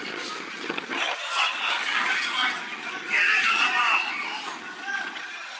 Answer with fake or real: fake